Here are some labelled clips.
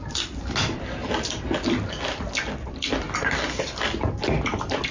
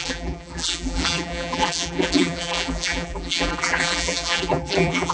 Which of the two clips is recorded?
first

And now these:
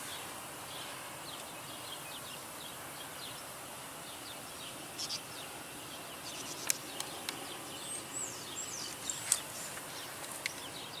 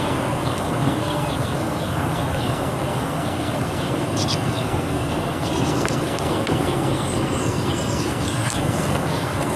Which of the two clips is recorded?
first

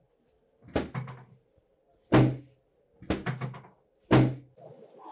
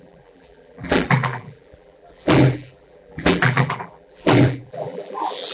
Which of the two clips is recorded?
first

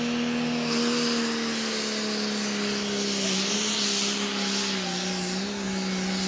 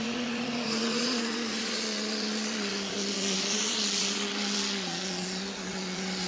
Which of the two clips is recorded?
first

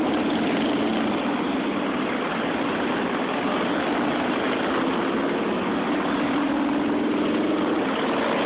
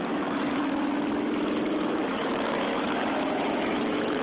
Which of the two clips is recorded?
first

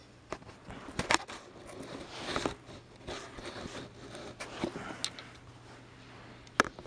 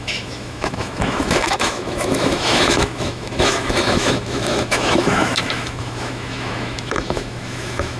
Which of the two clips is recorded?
first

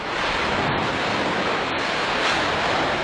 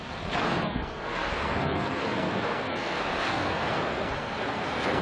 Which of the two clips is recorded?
first